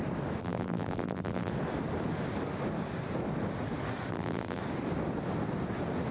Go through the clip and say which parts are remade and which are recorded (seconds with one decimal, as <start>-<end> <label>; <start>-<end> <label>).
0.0-0.4 recorded; 0.4-1.5 remade; 1.5-4.1 recorded; 4.1-4.6 remade; 4.6-6.1 recorded